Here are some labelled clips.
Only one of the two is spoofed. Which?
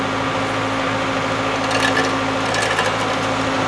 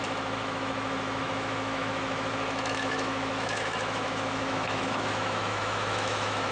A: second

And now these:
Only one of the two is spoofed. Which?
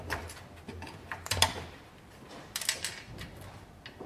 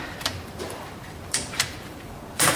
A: second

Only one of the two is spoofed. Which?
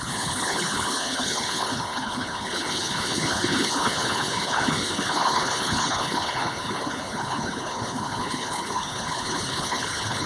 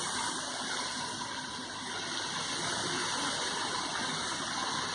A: first